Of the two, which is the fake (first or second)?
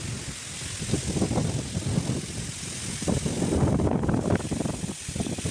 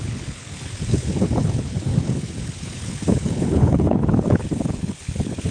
second